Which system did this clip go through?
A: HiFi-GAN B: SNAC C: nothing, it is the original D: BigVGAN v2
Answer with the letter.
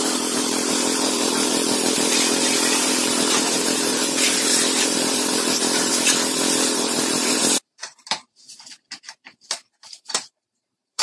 D